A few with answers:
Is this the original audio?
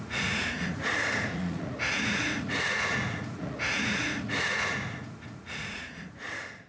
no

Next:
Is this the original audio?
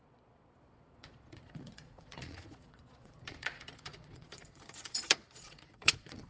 no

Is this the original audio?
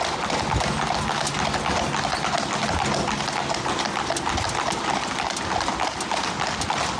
yes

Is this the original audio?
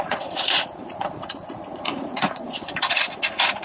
no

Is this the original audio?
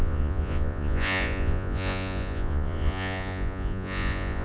no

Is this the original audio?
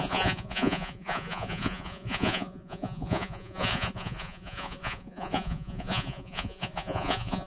no